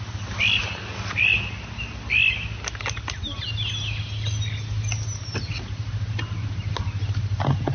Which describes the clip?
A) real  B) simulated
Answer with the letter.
A